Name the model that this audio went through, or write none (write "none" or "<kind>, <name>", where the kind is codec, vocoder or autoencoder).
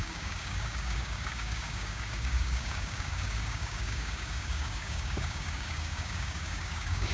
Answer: codec, DAC